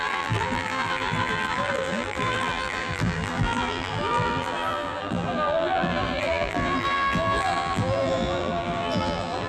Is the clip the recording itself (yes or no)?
no